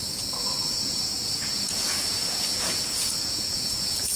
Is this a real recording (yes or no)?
no